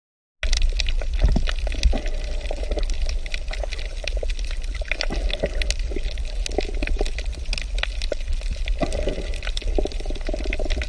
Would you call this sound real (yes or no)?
yes